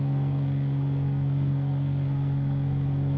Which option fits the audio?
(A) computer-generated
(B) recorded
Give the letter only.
A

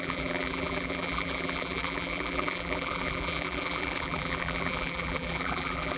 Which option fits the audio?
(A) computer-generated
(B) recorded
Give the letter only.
A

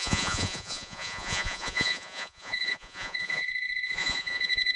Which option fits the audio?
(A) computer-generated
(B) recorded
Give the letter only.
A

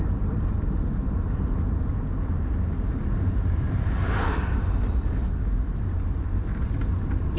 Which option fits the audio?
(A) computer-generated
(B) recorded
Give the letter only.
A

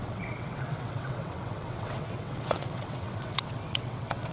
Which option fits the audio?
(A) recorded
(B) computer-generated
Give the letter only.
B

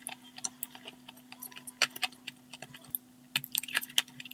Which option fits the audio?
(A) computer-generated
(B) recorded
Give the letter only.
B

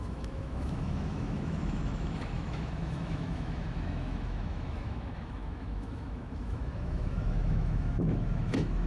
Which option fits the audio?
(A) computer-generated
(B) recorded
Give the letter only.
A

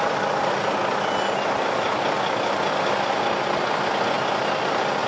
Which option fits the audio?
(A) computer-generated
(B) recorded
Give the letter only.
B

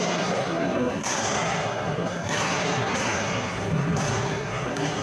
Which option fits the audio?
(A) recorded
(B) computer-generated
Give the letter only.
B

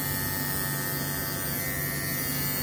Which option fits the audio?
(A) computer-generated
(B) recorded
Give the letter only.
B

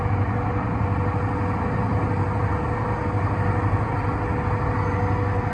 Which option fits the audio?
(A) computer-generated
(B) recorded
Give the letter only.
B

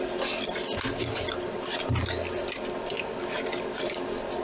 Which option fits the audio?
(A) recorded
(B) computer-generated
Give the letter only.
A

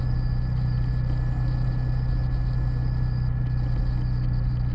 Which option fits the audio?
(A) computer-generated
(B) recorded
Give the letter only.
B